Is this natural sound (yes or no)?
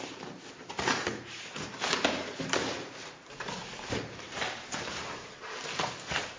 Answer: no